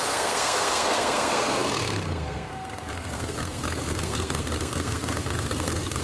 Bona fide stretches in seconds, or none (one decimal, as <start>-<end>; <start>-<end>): none